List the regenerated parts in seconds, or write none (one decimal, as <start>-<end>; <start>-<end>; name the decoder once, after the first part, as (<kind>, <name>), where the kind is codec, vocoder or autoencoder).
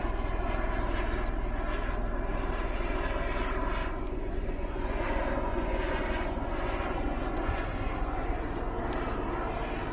3.8-8.8 (vocoder, Vocos)